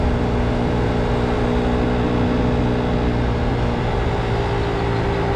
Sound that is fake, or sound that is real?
real